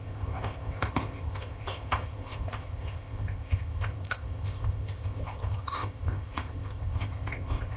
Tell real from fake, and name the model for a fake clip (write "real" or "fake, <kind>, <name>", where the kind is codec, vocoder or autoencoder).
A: fake, codec, ZipCodec